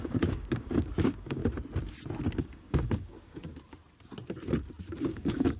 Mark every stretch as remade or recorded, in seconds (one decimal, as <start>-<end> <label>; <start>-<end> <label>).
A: 0.0-1.4 remade; 1.4-2.4 recorded; 2.4-3.5 remade; 3.5-5.0 recorded; 5.0-5.6 remade